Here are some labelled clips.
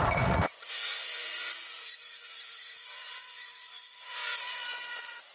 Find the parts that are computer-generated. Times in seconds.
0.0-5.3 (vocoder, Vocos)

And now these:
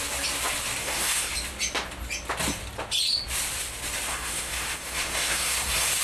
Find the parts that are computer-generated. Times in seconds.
0.8-1.3 (codec, SNAC); 4.1-6.0

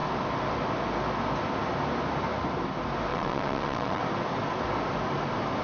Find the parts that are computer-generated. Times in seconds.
3.1-4.0 (vocoder, WaveNeXt)

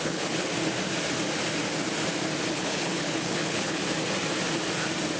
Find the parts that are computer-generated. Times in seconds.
0.0-0.5 (codec, HILCodec); 2.5-3.8

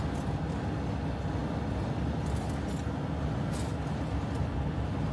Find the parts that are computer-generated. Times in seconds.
none

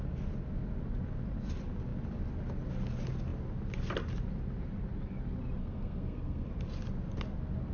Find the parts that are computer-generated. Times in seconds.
5.6-6.5 (codec, SNAC)